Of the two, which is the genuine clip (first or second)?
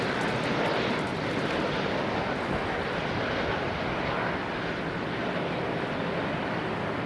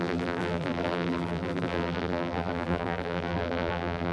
first